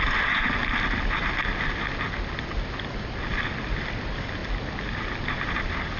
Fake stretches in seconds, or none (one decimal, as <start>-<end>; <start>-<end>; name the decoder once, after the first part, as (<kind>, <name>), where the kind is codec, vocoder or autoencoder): none